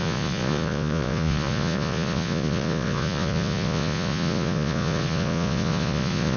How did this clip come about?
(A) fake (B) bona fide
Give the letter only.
A